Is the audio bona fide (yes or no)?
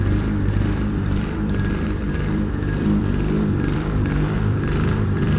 no